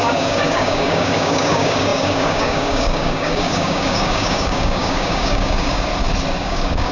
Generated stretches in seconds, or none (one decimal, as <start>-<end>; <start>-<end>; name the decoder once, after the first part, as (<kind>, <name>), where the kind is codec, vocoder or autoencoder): 0.0-5.9 (codec, DAC); 6.4-6.9